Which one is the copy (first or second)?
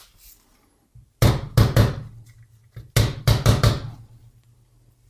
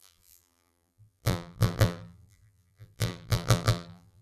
second